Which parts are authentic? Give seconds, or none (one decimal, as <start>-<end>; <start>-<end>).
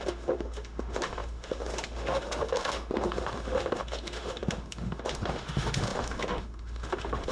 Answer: none